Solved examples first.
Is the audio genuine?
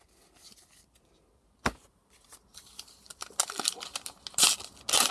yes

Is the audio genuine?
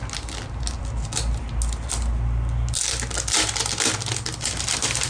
yes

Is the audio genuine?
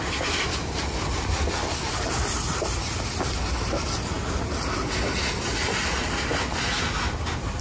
yes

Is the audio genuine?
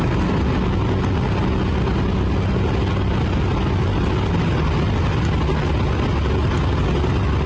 yes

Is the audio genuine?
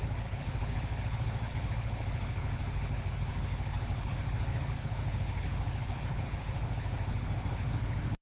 no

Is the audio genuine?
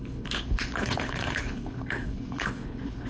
no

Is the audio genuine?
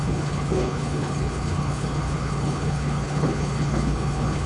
no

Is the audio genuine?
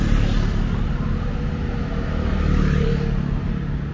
yes